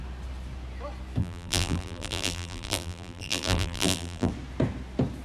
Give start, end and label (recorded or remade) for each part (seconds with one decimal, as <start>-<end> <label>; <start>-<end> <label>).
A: 0.0-1.2 recorded; 1.2-4.3 remade; 4.3-5.2 recorded